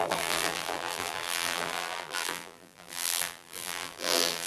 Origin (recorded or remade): remade